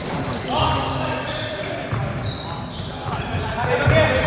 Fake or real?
real